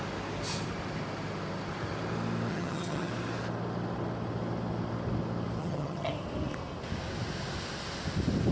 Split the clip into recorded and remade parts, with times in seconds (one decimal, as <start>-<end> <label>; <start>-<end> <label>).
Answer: 0.0-2.5 recorded; 2.5-3.1 remade; 3.1-5.6 recorded; 5.6-6.1 remade; 6.1-8.5 recorded